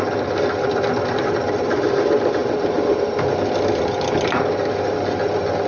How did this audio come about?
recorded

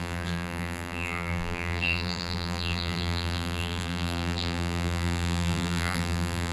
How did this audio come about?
remade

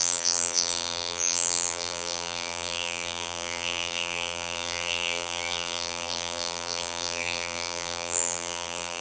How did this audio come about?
remade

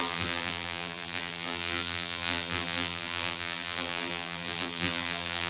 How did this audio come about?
remade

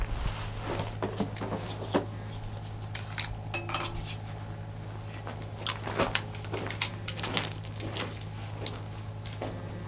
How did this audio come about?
recorded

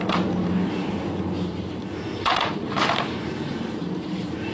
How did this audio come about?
remade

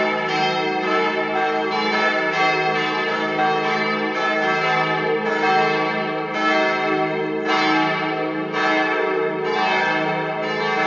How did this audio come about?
recorded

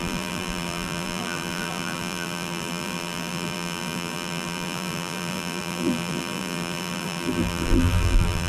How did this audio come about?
remade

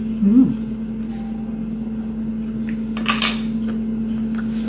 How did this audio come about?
recorded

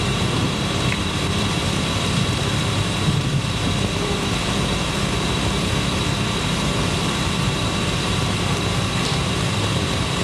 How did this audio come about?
remade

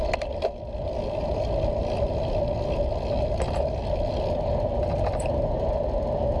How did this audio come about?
recorded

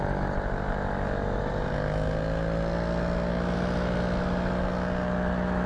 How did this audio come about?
recorded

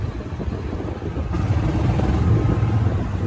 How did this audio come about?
recorded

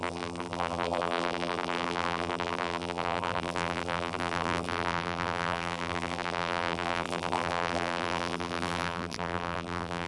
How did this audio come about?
remade